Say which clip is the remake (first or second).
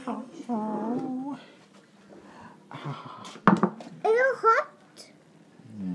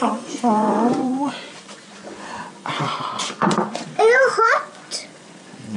second